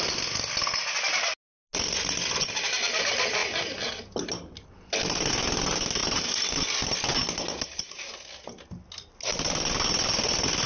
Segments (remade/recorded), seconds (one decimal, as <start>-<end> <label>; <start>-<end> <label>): 0.0-10.7 recorded